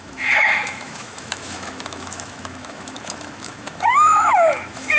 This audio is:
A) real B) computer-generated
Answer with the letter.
B